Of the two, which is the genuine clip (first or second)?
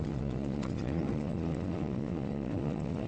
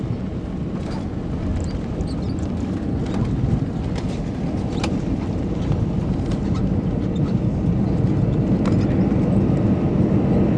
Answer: second